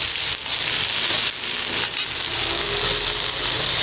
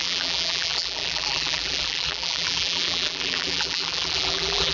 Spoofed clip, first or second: second